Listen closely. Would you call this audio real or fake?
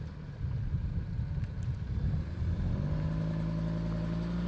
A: real